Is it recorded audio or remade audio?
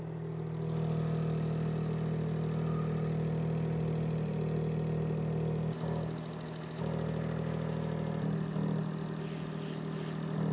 recorded